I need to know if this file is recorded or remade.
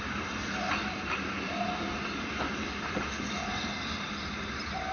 recorded